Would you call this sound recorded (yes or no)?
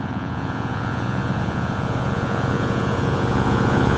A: no